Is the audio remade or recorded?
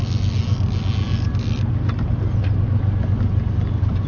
recorded